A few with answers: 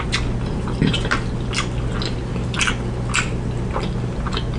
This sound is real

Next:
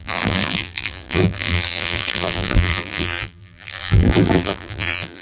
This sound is fake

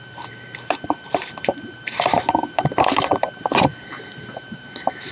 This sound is fake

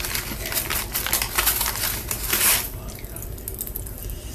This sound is real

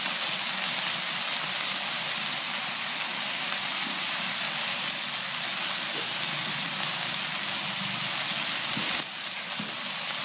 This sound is real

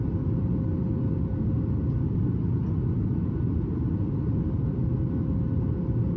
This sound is real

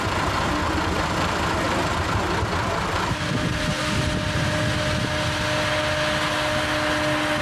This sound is real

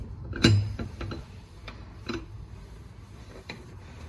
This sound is fake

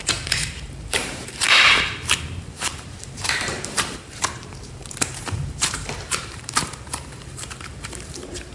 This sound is fake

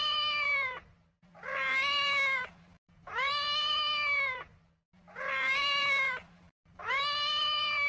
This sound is fake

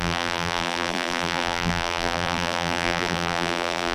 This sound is fake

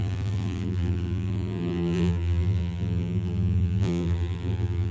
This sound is fake